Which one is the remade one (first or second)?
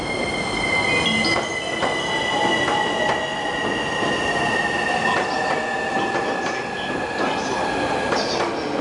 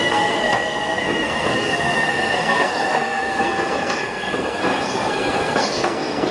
second